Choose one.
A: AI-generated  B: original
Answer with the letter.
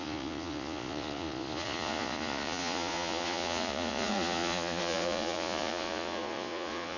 A